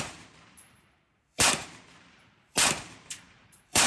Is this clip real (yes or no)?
no